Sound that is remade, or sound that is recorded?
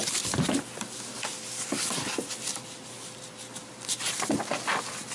recorded